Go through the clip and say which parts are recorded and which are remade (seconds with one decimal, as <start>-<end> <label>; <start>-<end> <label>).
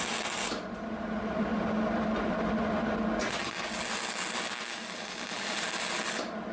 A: 0.0-1.5 remade; 1.5-5.4 recorded; 5.4-6.5 remade